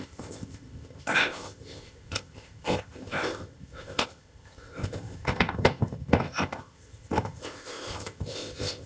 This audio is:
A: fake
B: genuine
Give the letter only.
A